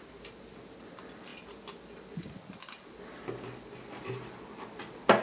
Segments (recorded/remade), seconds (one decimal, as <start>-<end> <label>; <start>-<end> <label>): 0.0-5.2 recorded